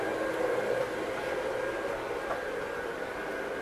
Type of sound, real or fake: real